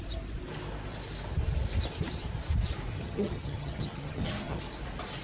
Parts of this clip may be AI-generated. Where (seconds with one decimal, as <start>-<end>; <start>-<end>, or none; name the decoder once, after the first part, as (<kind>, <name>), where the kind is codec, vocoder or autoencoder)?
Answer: 2.9-4.6 (vocoder, HiFi-GAN)